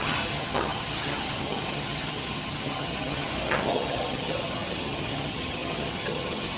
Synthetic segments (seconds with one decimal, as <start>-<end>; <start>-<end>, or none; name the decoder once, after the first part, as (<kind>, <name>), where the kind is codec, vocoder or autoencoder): 0.0-6.6 (vocoder, HiFi-GAN)